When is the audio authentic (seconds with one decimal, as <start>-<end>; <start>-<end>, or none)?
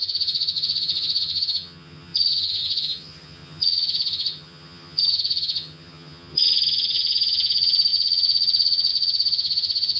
none